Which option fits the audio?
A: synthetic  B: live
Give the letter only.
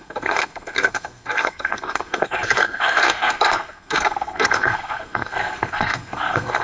A